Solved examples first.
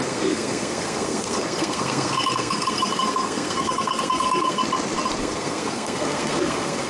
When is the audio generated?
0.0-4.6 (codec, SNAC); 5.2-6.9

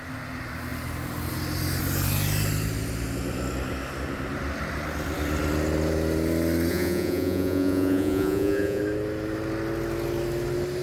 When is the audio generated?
6.7-8.8 (vocoder, Vocos)